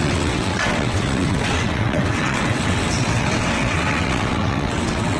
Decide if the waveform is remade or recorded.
remade